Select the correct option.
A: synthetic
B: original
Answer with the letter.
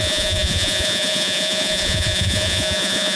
A